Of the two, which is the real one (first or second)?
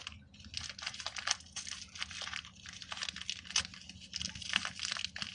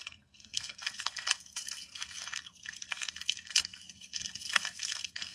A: first